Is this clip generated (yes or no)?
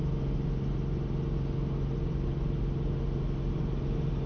no